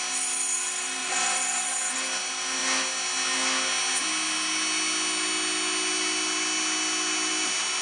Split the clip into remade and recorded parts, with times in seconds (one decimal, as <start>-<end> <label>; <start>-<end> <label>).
0.0-1.0 recorded; 1.0-1.8 remade; 1.8-7.8 recorded